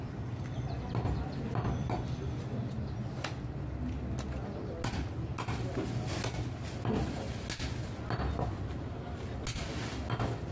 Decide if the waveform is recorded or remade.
recorded